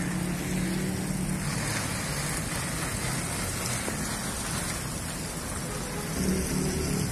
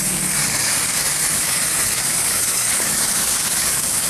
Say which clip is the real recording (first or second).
first